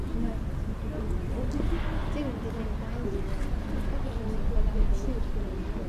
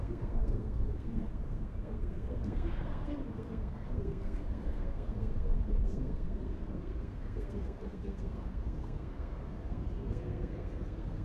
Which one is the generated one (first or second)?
second